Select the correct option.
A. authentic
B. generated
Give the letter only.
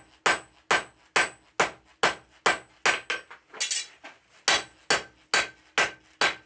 A